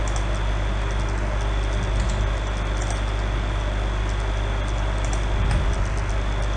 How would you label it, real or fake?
real